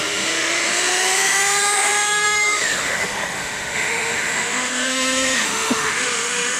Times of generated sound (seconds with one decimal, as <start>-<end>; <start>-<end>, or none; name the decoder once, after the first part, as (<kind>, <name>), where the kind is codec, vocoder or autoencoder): 0.0-6.6 (autoencoder, DAC-VAE)